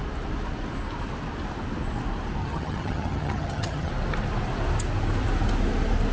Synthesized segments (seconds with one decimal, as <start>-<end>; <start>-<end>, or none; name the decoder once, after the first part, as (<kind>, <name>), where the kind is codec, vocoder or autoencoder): 2.4-3.9 (vocoder, HiFi-GAN)